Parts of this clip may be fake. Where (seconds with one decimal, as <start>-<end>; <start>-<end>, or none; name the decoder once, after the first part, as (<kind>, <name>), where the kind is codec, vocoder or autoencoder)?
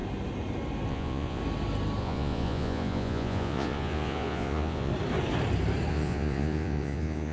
0.9-1.4 (vocoder, Vocos); 2.0-4.9; 5.9-7.3